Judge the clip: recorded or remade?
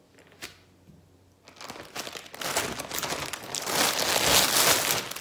recorded